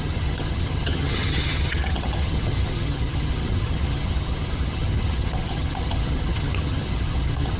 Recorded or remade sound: remade